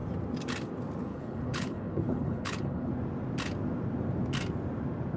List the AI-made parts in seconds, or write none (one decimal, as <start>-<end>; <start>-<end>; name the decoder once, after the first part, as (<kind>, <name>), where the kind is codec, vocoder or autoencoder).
1.1-2.9 (codec, HILCodec)